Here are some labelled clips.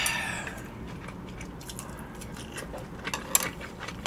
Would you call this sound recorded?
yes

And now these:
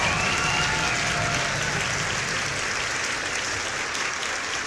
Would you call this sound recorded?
yes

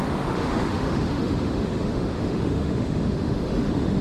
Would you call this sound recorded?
no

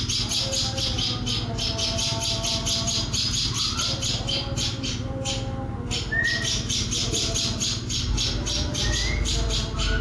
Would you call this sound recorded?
yes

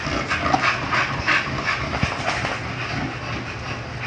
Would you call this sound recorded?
yes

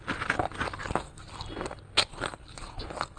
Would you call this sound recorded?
yes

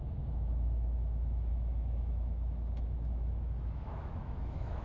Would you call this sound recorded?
no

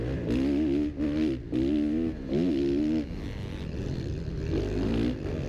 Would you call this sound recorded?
yes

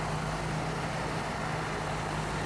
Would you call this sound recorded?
yes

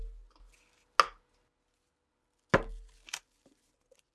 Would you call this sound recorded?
yes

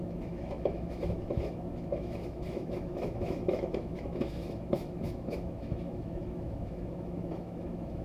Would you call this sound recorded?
no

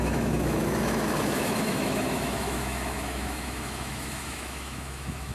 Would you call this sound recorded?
no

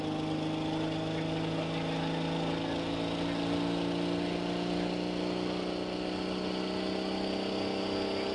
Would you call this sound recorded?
yes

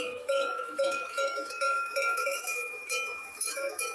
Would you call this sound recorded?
no